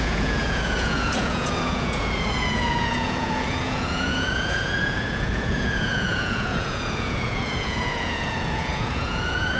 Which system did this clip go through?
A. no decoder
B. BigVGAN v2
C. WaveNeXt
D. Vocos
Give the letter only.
D